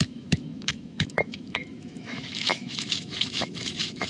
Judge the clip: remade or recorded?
remade